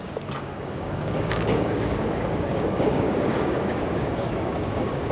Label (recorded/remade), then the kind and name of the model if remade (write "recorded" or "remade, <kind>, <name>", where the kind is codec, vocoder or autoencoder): remade, codec, DAC